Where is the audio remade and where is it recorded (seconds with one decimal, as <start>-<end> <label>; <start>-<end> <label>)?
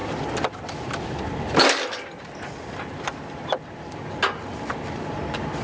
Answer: 0.0-5.6 recorded